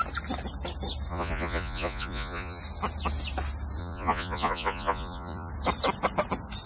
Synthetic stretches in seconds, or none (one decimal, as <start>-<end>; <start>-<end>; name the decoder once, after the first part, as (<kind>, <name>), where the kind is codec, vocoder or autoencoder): 1.1-2.6 (vocoder, Vocos); 3.8-5.5